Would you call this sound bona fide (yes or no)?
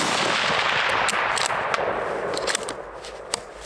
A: yes